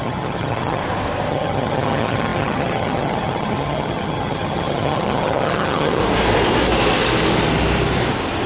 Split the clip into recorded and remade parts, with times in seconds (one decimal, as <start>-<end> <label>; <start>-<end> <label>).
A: 0.0-0.8 remade; 0.8-1.3 recorded; 1.3-6.0 remade; 6.0-8.5 recorded

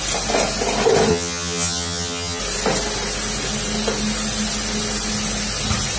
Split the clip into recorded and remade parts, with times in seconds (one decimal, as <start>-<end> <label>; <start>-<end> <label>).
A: 0.0-1.1 recorded; 1.1-2.4 remade; 2.4-6.0 recorded

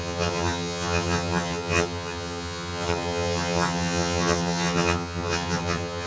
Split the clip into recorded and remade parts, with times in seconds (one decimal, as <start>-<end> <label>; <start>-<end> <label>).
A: 0.0-6.1 remade

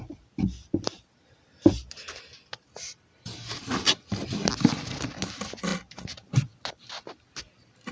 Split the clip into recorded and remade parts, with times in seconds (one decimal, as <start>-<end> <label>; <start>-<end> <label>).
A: 0.0-7.9 recorded

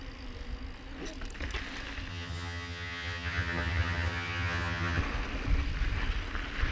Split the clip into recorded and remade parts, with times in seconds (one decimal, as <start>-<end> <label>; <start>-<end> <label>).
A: 0.0-2.1 recorded; 2.1-5.0 remade; 5.0-6.7 recorded

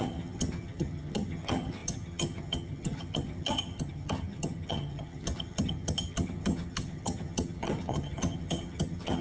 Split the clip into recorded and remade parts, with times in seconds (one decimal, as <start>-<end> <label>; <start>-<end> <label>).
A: 0.0-9.2 remade

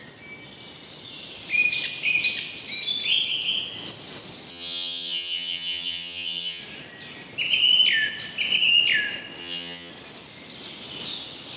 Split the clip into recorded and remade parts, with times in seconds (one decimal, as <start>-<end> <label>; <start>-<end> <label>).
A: 0.0-4.5 recorded; 4.5-6.6 remade; 6.6-9.4 recorded; 9.4-9.9 remade; 9.9-11.6 recorded

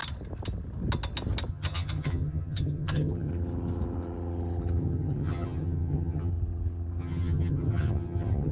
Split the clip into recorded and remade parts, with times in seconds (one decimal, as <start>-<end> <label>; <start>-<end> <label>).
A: 0.0-1.5 recorded; 1.5-3.3 remade; 3.3-4.8 recorded; 4.8-6.3 remade; 6.3-7.0 recorded; 7.0-8.5 remade